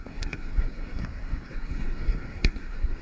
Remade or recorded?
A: remade